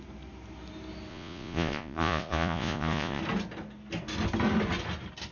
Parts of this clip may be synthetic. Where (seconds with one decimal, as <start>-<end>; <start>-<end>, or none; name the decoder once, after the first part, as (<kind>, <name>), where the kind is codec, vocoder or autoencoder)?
1.1-3.2 (vocoder, Vocos)